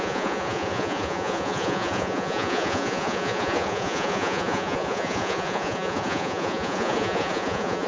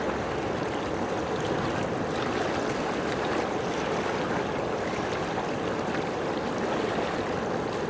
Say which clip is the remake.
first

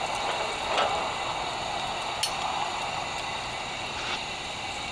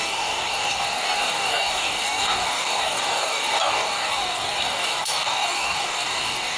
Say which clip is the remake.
second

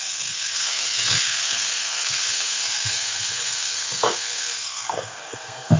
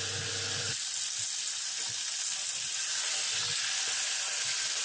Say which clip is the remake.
first